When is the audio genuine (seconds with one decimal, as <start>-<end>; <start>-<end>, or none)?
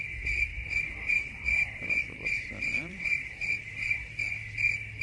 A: 0.0-0.5; 3.5-5.0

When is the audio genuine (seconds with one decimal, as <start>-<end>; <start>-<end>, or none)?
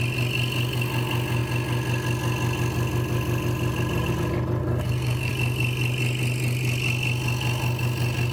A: 0.0-4.6; 5.3-8.3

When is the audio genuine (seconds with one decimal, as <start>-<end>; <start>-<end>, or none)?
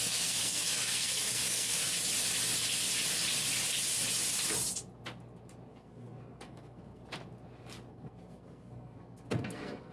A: 1.8-5.7; 7.0-7.9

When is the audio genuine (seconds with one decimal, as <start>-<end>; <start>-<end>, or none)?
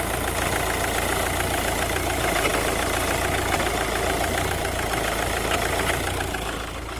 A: 0.0-7.0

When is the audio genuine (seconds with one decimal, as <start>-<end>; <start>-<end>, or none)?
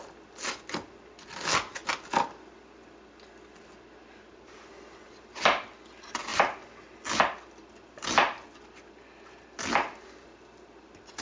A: 0.0-11.2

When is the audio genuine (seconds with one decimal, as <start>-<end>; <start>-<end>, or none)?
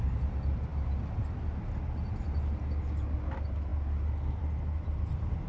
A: 0.0-5.5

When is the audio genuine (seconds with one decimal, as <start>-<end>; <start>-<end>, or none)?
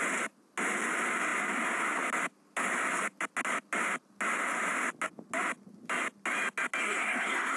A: 0.0-6.8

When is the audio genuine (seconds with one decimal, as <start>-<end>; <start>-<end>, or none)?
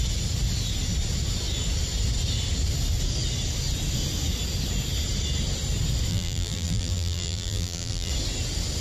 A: 0.0-6.1; 8.1-8.8